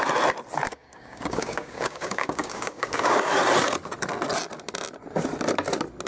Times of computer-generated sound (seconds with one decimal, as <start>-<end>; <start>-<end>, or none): 0.7-3.3